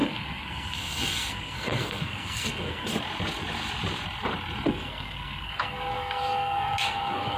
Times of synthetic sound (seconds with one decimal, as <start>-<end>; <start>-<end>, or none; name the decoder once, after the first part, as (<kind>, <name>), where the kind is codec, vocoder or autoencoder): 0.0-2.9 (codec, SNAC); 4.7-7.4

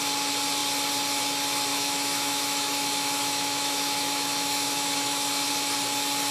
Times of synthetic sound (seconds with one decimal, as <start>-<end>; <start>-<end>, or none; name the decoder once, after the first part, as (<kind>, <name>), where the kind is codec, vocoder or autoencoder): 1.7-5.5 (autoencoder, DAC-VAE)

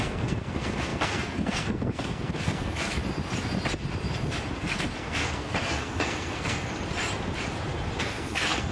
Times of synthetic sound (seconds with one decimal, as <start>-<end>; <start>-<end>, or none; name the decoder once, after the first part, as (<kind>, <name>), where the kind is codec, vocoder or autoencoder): 0.0-3.0 (codec, SNAC); 4.6-6.7; 8.0-8.7

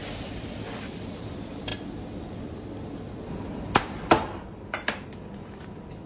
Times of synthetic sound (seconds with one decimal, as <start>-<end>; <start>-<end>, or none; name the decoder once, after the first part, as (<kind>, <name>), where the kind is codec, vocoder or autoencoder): 0.0-6.1 (vocoder, BigVGAN v2)